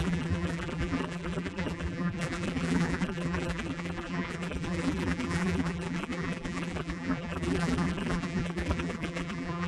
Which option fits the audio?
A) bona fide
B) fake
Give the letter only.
B